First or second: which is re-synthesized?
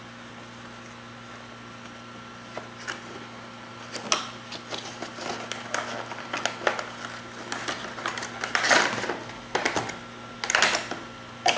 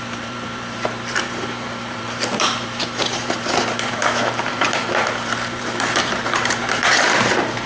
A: second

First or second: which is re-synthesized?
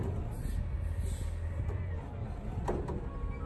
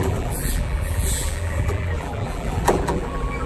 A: second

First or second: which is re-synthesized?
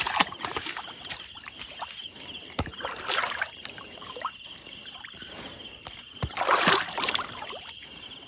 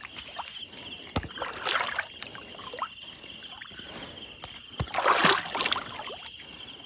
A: first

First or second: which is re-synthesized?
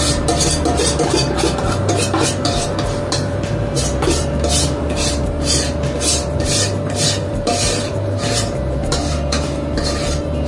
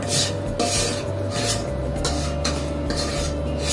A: first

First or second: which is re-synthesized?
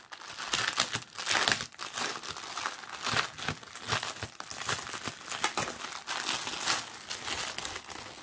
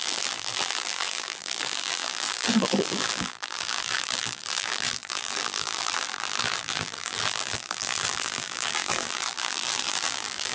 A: second